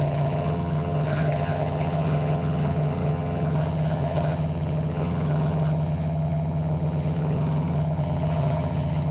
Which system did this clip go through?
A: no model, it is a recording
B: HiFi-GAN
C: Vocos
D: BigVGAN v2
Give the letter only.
B